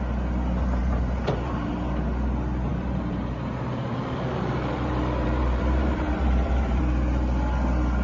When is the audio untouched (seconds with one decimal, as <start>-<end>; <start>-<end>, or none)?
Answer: 0.0-0.8; 1.7-2.7; 6.8-8.0